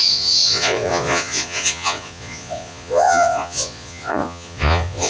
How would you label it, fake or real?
fake